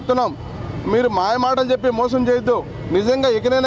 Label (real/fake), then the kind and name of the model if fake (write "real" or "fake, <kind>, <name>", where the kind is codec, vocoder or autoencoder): real